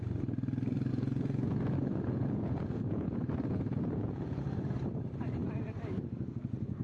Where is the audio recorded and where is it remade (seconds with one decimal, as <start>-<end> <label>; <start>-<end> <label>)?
0.0-0.9 recorded; 0.9-4.4 remade; 4.4-6.8 recorded